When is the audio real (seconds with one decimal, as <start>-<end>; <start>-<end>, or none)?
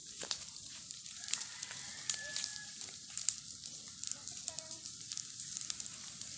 1.3-2.5; 3.1-6.4